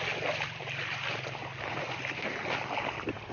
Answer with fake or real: real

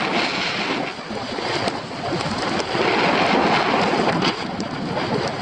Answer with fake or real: real